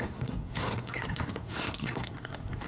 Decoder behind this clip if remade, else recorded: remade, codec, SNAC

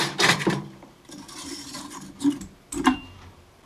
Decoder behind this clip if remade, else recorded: remade, vocoder, BigVGAN v2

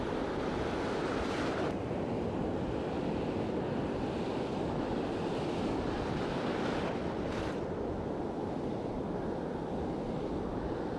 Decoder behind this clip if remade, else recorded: recorded